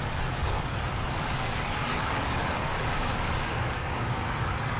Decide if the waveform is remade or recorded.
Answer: remade